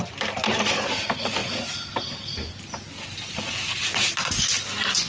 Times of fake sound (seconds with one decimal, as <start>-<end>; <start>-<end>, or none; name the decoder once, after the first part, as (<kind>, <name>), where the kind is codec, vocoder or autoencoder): none